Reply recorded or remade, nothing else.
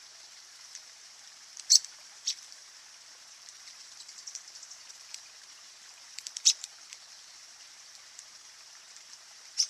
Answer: remade